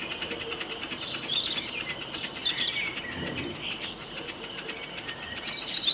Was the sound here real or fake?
real